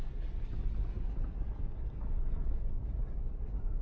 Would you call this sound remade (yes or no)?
no